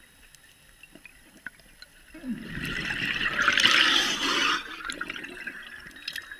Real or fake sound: real